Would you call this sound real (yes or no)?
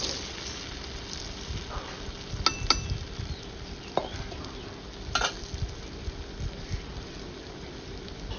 yes